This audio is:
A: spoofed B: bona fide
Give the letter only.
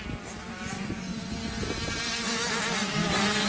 B